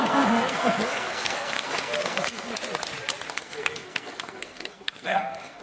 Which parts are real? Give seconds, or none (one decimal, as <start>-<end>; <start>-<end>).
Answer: 2.5-3.3